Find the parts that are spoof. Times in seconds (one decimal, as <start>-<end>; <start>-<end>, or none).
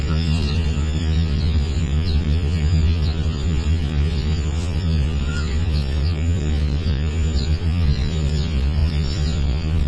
0.0-9.9